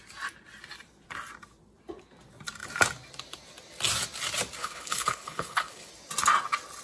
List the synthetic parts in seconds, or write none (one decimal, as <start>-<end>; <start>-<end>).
4.6-5.9